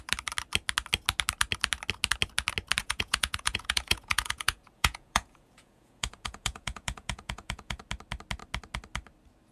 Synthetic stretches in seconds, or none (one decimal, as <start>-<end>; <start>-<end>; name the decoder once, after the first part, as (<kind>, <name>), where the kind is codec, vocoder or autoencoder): 2.8-7.8 (vocoder, Vocos)